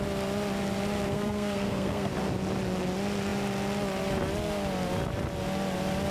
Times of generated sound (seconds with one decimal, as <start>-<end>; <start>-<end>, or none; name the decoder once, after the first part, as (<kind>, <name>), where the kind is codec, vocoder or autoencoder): 1.1-2.1 (codec, SNAC)